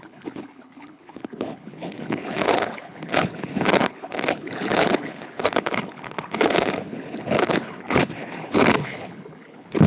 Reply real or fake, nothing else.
fake